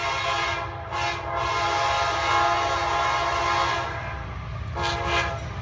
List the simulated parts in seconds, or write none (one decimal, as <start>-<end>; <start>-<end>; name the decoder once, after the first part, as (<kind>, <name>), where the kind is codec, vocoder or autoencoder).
none